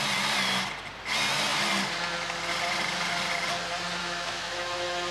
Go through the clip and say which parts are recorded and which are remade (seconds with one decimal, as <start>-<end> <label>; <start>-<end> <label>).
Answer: 0.0-4.0 recorded; 4.0-5.1 remade